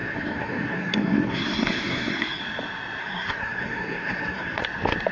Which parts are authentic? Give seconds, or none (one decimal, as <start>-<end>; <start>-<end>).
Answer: 2.4-3.0; 4.6-5.1